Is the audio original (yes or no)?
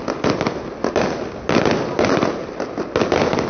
yes